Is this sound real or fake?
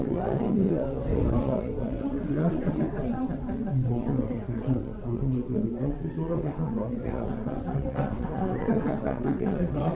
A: fake